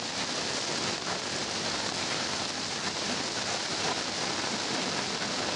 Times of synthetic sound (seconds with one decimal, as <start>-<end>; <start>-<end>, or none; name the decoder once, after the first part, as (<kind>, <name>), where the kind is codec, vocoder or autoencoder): 1.4-4.7 (vocoder, BigVGAN v2)